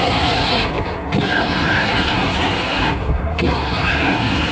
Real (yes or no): no